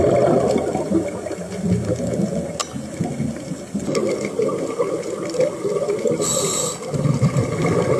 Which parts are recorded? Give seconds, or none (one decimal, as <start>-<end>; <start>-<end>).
0.0-8.0